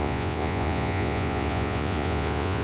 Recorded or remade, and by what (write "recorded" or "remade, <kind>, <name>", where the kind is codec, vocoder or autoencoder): remade, vocoder, Vocos